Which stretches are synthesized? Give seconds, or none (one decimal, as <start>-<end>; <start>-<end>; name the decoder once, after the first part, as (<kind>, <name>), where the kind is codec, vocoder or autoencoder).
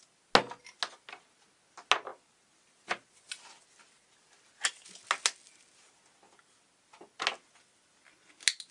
none